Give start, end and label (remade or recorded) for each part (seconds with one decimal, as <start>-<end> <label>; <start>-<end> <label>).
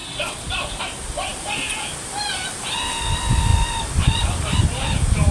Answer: 0.0-0.8 remade; 0.8-1.3 recorded; 1.3-2.5 remade; 2.5-3.5 recorded; 3.5-4.6 remade; 4.6-5.3 recorded